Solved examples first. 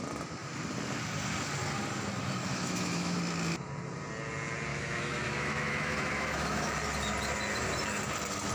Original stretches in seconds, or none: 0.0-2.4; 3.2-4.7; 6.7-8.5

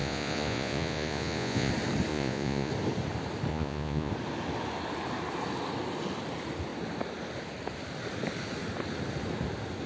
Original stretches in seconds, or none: 1.7-2.1; 2.7-3.5; 4.1-9.9

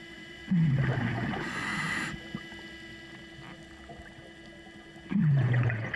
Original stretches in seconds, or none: 0.4-1.0; 1.7-5.2